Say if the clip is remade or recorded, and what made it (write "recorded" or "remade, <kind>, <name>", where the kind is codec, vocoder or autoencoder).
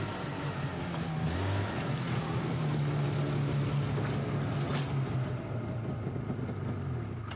remade, vocoder, BigVGAN v2